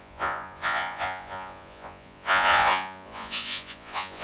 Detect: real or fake fake